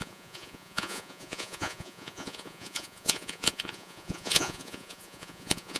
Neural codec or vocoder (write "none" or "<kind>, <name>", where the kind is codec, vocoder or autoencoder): vocoder, Vocos